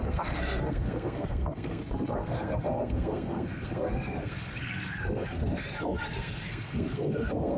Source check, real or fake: fake